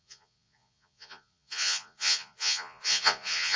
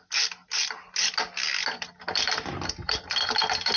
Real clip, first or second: second